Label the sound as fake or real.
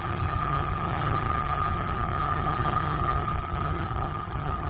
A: fake